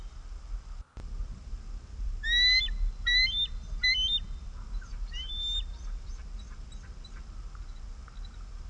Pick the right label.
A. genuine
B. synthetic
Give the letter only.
A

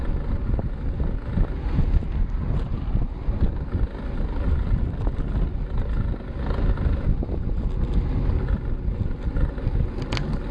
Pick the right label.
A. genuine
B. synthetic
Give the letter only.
A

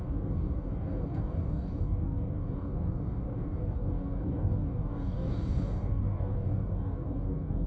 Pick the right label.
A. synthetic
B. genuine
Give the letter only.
A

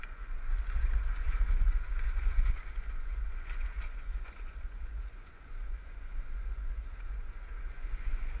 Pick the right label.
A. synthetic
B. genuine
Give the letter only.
A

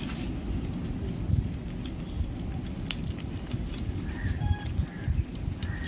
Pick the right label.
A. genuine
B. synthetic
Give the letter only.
A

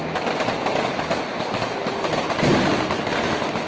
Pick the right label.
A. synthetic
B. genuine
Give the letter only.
B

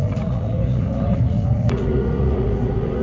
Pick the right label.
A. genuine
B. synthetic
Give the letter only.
B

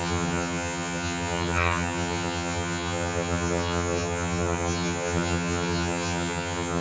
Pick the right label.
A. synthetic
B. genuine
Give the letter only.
A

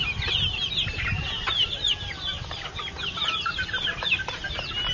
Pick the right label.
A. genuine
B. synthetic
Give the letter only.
A